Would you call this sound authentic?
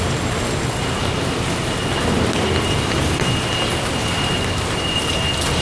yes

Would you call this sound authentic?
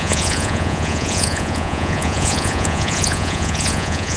no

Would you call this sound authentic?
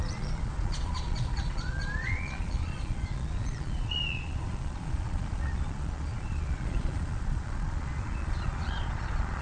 no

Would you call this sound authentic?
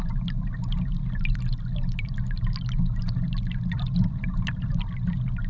yes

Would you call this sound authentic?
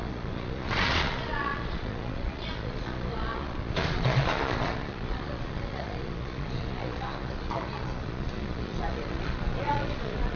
no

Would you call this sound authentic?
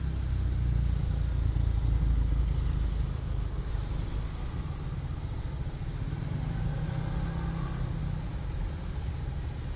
yes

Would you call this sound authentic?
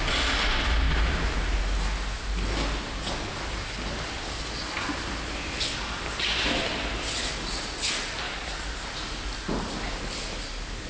yes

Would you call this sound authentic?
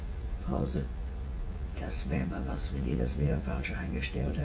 no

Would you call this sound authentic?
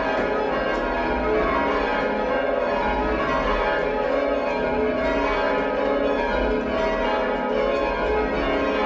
yes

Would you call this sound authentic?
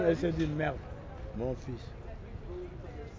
yes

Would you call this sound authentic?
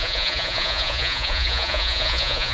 no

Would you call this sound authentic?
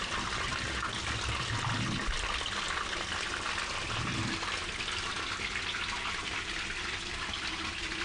yes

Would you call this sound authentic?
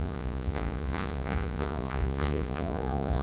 no